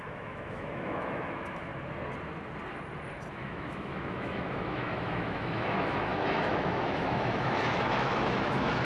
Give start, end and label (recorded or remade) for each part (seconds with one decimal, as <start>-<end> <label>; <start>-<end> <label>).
0.0-1.7 remade; 1.7-3.3 recorded; 3.3-8.8 remade